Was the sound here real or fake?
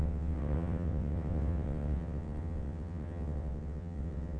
fake